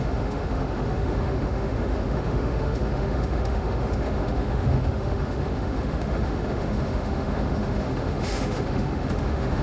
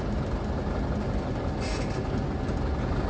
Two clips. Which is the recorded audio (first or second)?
second